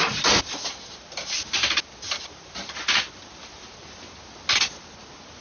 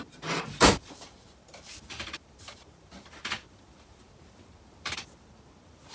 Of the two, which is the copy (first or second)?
second